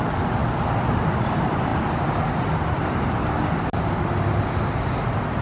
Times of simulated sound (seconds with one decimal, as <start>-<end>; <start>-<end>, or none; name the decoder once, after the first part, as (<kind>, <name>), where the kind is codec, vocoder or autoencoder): none